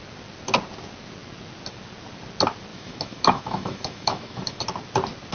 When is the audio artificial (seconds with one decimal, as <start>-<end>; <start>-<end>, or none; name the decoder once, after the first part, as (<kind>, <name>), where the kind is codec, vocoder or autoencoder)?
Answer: 2.7-4.6 (autoencoder, DAC-VAE)